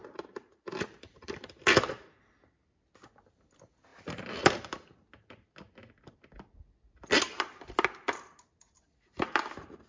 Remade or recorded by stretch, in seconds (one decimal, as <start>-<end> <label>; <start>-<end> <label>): 0.0-1.6 remade; 1.6-3.9 recorded; 3.9-4.5 remade; 4.5-9.9 recorded